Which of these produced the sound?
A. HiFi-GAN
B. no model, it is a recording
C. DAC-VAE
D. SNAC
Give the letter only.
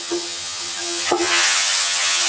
A